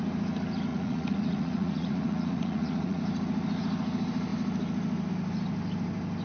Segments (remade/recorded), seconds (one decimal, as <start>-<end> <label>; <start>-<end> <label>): 0.0-0.7 recorded; 0.7-3.0 remade; 3.0-6.2 recorded